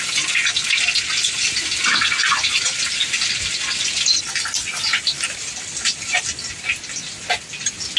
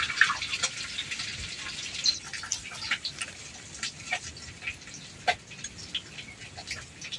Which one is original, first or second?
first